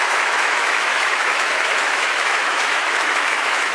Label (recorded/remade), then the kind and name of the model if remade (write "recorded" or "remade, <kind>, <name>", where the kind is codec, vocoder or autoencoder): remade, autoencoder, DAC-VAE